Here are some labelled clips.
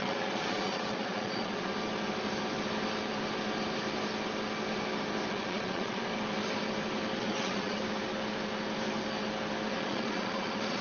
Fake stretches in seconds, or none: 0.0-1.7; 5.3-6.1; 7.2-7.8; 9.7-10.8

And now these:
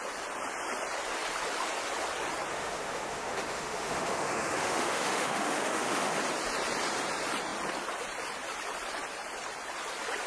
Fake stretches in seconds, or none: 2.5-6.2

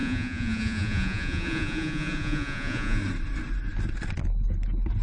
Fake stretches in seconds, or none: 0.0-3.0

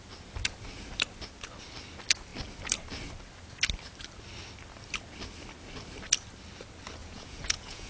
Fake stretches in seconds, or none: 7.0-7.9

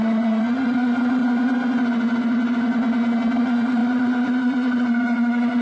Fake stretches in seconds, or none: 0.0-1.2; 3.4-5.6